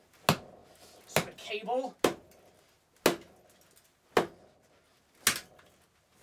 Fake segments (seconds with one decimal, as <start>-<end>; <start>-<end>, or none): none